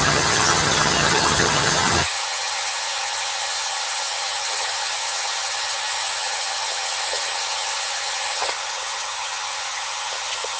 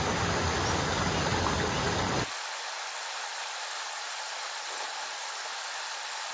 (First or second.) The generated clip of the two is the first